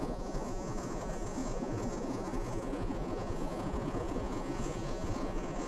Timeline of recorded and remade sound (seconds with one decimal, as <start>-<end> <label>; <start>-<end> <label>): 0.0-5.7 remade